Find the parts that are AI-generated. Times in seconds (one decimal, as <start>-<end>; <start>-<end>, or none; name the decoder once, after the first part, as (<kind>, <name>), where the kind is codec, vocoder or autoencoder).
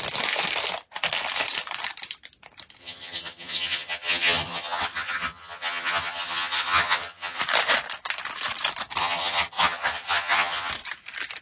2.8-7.4 (vocoder, HiFi-GAN); 9.0-10.7